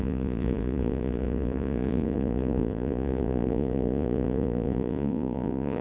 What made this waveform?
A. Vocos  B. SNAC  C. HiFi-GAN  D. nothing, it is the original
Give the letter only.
A